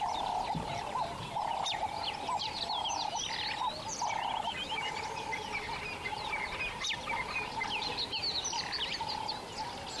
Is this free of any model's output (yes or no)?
yes